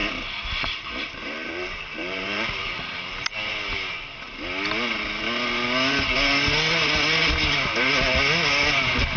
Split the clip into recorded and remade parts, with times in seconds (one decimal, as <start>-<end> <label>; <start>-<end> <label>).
0.0-2.8 remade; 2.8-9.2 recorded